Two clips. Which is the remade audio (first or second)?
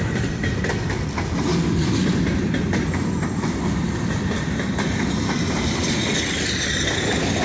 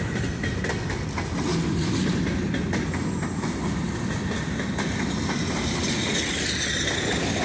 first